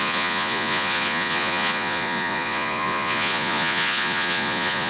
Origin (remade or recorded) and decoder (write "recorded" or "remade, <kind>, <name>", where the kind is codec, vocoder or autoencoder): remade, vocoder, Vocos